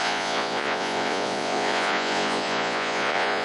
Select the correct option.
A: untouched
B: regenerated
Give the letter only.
B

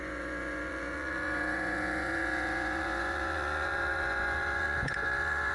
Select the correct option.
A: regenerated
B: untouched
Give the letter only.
A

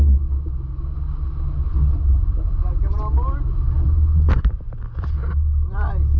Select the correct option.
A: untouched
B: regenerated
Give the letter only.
A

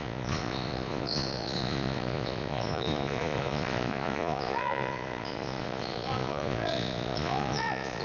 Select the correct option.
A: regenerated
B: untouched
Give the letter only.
A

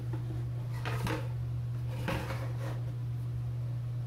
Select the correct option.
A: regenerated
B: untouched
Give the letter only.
B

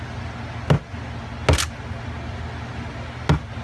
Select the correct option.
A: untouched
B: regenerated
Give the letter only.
A